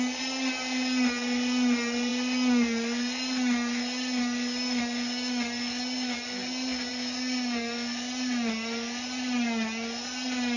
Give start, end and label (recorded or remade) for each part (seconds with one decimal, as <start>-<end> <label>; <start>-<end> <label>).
0.0-10.6 recorded